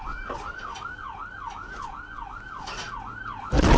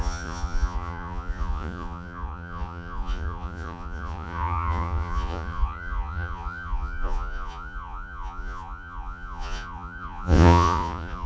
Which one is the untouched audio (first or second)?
first